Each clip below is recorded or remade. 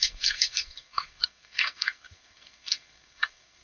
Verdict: remade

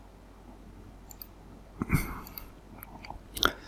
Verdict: recorded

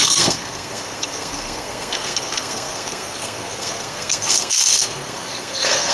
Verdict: remade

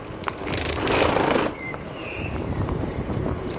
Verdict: remade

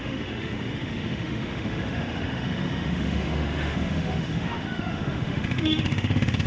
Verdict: remade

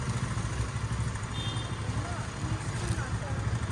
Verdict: recorded